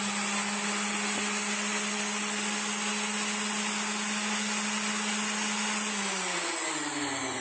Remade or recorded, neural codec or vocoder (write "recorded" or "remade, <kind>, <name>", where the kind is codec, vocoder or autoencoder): recorded